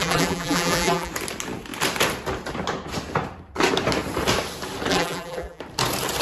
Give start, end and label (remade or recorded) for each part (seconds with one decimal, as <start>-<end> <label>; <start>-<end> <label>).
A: 0.0-1.1 remade; 1.1-4.9 recorded; 4.9-5.6 remade; 5.6-6.2 recorded